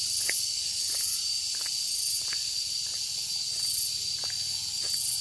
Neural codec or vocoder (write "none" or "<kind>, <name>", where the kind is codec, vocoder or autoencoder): none